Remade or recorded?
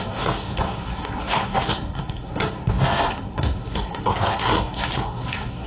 remade